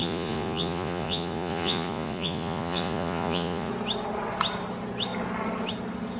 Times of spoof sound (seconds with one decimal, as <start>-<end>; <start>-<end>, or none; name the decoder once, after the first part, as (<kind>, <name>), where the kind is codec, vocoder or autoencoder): 0.0-3.7 (vocoder, Vocos)